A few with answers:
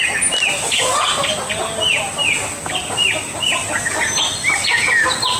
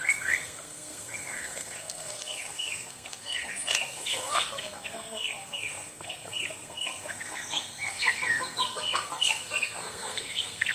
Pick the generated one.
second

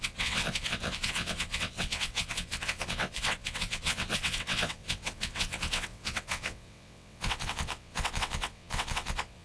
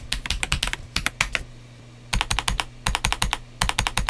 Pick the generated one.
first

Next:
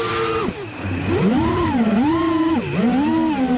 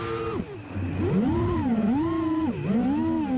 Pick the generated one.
first